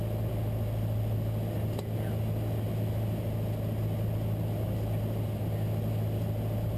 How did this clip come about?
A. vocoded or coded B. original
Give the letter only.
B